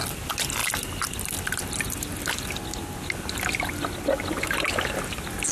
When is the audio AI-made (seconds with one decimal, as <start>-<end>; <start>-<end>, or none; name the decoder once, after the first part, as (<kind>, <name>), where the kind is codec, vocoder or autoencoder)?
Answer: none